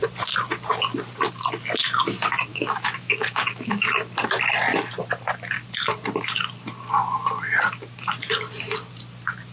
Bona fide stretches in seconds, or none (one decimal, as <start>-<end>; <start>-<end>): 0.0-2.5; 3.9-9.5